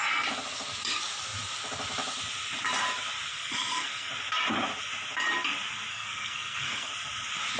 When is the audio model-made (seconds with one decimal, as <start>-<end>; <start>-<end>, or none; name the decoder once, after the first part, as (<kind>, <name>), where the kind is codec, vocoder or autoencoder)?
3.3-4.1 (codec, SNAC); 5.9-6.9